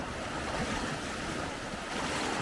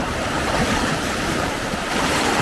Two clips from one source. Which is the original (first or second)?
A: first